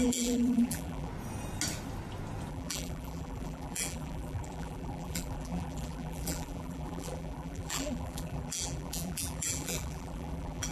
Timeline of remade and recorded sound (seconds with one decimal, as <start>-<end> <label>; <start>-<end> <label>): 0.0-1.1 remade; 1.1-2.5 recorded; 2.5-10.7 remade